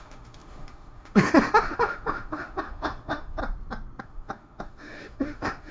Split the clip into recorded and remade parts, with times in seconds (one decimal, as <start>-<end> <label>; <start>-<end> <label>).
0.0-3.4 remade; 3.4-4.0 recorded; 4.0-5.7 remade